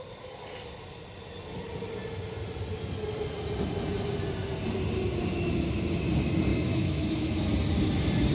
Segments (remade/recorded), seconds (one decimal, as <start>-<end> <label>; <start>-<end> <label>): 0.0-6.5 recorded; 6.5-7.5 remade; 7.5-8.3 recorded